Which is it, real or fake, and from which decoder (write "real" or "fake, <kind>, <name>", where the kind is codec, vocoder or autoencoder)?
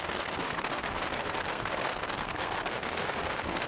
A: fake, codec, SNAC